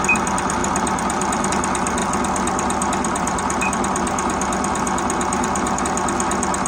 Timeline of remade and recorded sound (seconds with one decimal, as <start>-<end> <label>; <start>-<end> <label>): 0.0-0.6 recorded; 0.6-1.5 remade; 1.5-2.0 recorded; 2.0-5.8 remade; 5.8-6.7 recorded